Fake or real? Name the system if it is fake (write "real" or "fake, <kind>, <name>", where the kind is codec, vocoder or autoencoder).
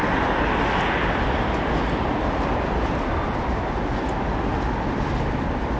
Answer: real